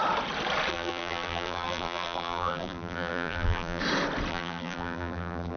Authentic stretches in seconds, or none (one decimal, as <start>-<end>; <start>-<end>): 0.0-0.7; 3.8-4.3